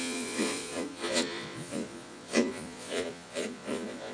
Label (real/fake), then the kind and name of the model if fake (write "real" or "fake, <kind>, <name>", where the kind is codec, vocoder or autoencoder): fake, vocoder, Vocos